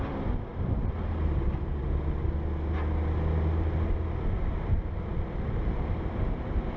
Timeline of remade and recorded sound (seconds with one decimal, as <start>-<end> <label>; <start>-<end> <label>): 0.0-0.5 remade; 0.5-4.6 recorded; 4.6-6.8 remade